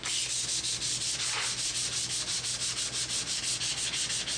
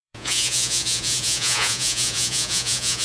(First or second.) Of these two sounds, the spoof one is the second